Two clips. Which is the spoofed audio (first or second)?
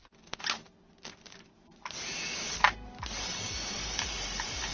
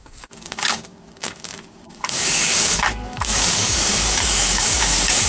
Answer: second